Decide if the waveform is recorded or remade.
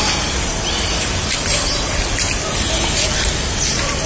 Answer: recorded